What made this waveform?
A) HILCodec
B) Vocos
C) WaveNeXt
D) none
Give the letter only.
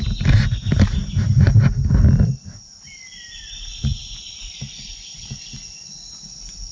D